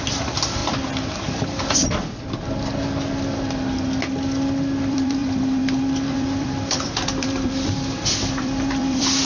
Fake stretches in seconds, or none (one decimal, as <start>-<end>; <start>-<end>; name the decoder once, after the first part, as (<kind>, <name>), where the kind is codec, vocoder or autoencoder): 0.0-0.6 (vocoder, BigVGAN v2); 4.8-9.2